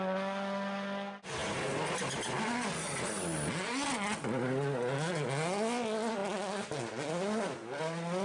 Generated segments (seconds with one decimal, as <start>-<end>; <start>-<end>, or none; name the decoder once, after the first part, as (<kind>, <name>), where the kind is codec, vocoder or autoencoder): none